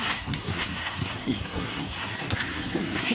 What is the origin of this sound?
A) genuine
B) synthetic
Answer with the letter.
B